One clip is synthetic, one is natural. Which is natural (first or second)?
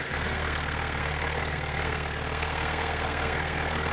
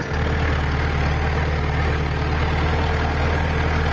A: second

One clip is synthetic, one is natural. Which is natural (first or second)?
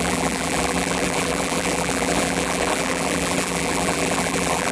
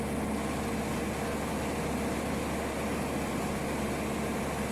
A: second